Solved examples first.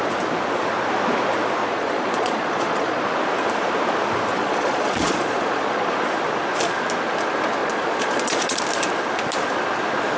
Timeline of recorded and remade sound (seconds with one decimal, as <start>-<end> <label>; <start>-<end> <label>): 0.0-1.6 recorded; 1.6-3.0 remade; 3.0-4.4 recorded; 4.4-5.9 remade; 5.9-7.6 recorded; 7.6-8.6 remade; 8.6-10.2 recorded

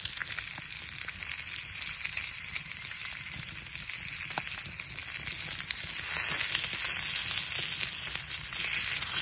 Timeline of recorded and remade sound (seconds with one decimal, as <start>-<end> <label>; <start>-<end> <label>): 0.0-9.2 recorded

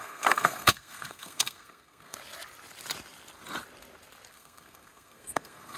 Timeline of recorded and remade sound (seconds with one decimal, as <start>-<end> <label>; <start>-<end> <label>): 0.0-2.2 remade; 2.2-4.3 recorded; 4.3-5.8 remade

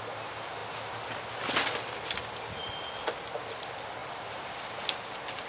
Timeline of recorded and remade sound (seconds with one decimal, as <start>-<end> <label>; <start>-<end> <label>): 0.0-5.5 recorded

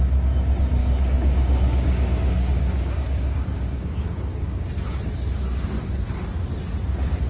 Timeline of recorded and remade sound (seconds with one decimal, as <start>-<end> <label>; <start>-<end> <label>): 0.0-0.8 recorded; 0.8-4.6 remade; 4.6-7.3 recorded

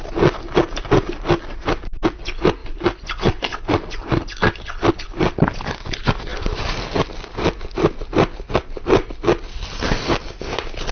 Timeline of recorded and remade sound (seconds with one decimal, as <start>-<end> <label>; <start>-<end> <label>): 0.0-10.9 recorded

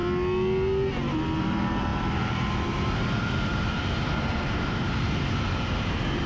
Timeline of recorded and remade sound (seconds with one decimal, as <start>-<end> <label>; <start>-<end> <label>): 0.0-1.4 recorded; 1.4-6.3 remade